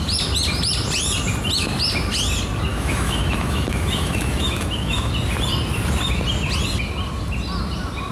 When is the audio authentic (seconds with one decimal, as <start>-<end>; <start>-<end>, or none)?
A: 0.0-2.7; 5.1-8.1